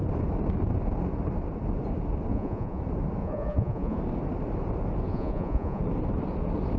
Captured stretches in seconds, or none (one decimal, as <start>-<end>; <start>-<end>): 0.0-2.3; 2.8-3.2; 4.0-5.1; 5.8-6.8